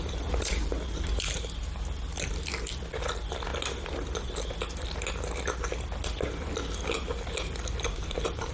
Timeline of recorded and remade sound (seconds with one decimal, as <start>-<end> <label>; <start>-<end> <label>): 0.0-8.5 recorded